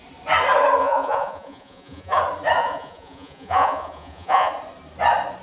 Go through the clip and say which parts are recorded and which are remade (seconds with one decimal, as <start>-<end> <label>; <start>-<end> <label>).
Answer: 0.0-0.8 recorded; 0.8-2.2 remade; 2.2-2.6 recorded; 2.6-4.5 remade; 4.5-5.4 recorded